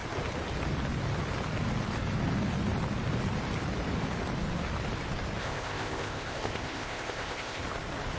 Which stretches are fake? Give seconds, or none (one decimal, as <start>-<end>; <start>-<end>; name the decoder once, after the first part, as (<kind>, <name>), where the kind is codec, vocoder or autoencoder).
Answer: 5.4-7.6 (codec, ZipCodec)